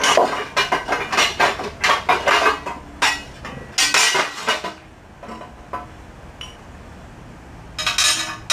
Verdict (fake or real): real